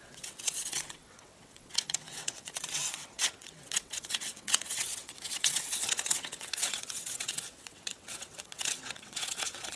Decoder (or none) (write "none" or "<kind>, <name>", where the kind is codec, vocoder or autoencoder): vocoder, WaveNeXt